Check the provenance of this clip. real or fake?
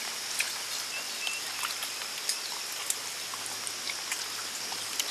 real